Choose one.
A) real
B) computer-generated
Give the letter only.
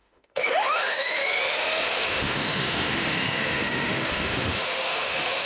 B